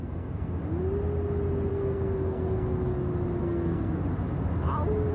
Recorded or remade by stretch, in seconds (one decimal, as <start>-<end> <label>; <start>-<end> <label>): 0.0-0.6 remade; 0.6-1.7 recorded; 1.7-2.9 remade; 2.9-3.4 recorded; 3.4-4.0 remade; 4.0-5.1 recorded